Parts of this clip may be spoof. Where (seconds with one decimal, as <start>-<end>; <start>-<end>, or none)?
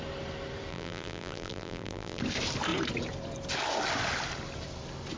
0.7-2.2